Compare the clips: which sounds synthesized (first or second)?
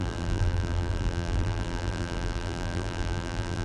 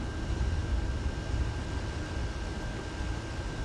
first